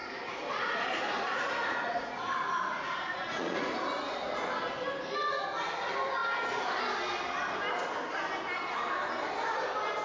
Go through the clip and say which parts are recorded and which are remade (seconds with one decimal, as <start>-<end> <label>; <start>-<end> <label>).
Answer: 0.0-3.8 remade; 3.8-10.0 recorded